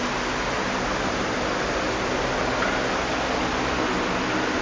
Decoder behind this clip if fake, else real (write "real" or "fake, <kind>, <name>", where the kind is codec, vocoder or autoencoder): real